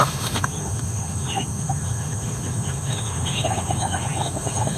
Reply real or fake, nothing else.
fake